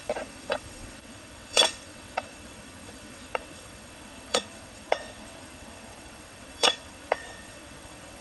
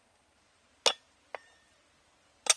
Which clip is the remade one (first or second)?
first